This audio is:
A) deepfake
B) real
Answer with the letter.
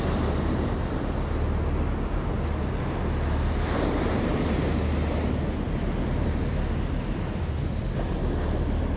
B